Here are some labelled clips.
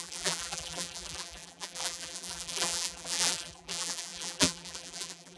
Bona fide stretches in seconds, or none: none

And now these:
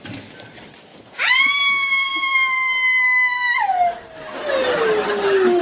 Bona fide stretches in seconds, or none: 0.0-0.9; 1.5-5.6

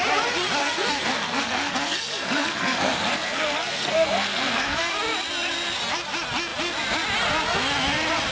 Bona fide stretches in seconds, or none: 0.0-0.6; 4.9-8.3

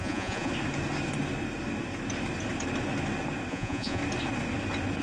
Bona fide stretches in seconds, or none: 0.5-3.5; 4.0-5.0

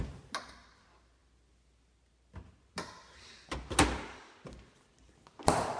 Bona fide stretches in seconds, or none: 0.0-5.8

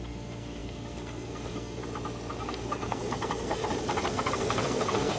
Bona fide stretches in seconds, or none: 1.8-2.4; 3.6-4.1

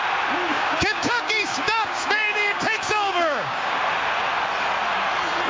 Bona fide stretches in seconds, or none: 0.0-0.5; 3.8-5.5

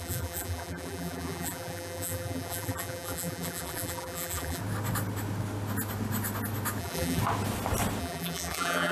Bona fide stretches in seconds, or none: 4.6-6.8; 7.2-8.0